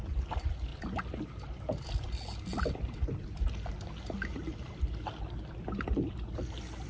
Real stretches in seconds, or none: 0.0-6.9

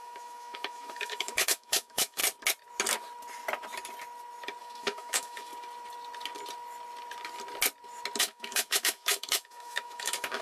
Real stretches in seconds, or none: 2.2-4.6; 5.5-8.2

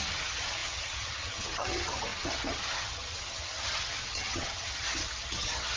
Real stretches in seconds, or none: none

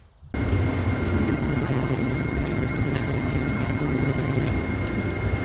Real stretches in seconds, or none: 0.0-1.3; 4.5-5.4

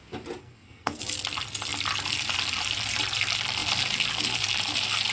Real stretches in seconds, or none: 0.0-0.4; 1.0-5.1